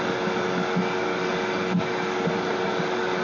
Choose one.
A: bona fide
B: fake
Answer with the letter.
B